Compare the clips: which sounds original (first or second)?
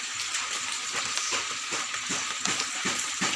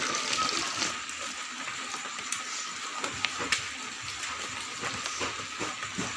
second